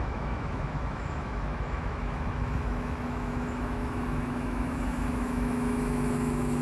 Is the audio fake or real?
fake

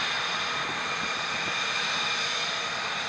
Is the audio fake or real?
real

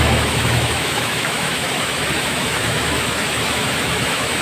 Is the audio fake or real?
fake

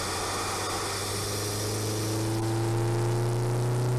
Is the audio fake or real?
real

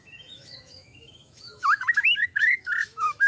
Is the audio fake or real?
fake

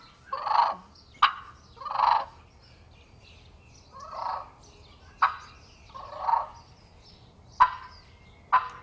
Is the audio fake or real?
real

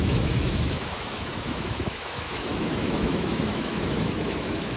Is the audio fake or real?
fake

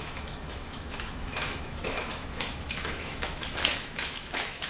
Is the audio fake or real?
fake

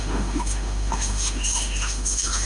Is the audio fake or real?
fake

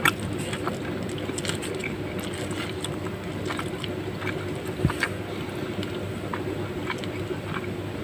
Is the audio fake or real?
real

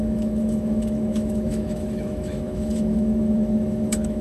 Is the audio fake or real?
fake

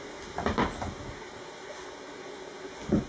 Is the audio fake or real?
real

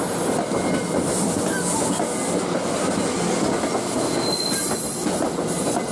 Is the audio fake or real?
real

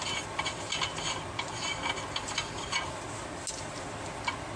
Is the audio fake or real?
real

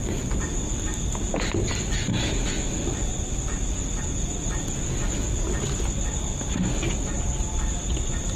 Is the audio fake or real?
real